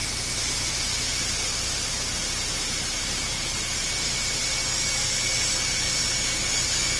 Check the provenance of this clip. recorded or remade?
recorded